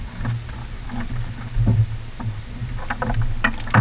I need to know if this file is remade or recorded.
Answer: recorded